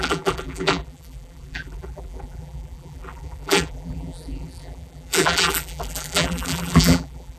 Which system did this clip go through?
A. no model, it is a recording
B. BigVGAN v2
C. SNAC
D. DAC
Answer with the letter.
B